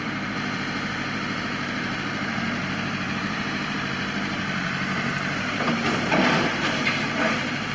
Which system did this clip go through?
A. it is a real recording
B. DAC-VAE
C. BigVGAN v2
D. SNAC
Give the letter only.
C